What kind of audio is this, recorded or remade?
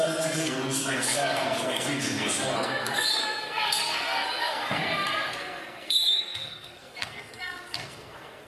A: remade